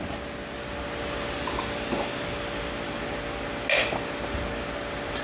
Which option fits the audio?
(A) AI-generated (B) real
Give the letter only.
B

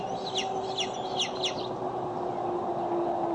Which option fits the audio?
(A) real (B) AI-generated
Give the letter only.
A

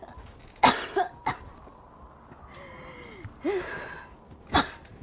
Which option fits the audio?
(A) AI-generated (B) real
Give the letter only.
B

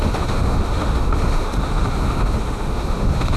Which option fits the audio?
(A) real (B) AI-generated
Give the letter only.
B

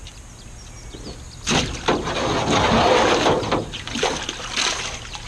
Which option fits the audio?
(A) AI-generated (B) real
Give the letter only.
B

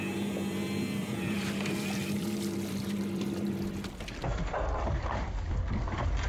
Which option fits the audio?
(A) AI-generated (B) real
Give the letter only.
B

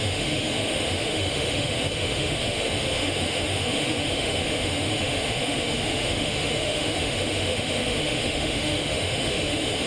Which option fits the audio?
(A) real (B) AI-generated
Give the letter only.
B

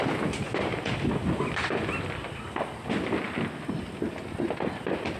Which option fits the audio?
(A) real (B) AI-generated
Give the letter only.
A